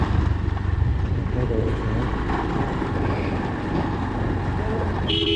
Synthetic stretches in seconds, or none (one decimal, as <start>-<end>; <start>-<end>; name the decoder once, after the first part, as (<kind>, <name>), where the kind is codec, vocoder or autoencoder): none